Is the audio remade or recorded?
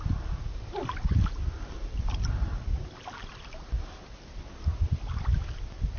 recorded